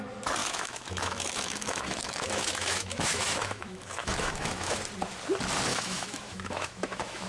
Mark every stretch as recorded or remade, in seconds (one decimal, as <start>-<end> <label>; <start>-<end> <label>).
0.0-0.4 recorded; 0.4-4.8 remade; 4.8-5.7 recorded; 5.7-7.3 remade